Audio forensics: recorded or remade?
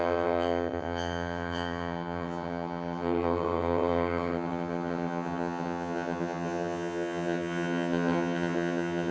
remade